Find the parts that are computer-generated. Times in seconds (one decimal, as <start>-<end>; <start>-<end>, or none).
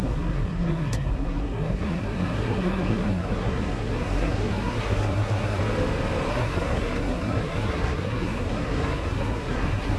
0.0-5.6; 6.3-10.0